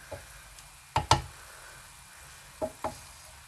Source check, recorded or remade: recorded